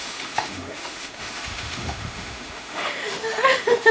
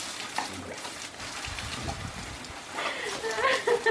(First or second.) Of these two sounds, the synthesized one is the first